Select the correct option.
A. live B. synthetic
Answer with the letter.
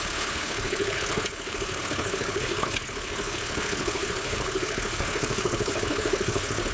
B